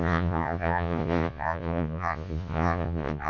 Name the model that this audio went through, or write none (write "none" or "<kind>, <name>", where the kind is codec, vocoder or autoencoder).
vocoder, Vocos